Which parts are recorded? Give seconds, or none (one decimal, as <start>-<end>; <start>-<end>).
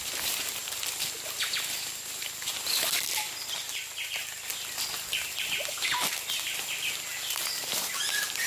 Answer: 0.0-8.5